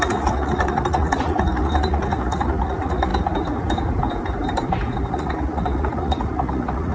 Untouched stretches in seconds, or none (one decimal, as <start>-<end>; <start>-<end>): 3.1-5.1